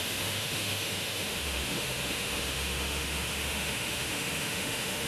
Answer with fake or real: fake